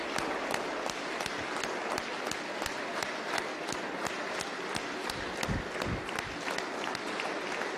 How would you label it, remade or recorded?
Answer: recorded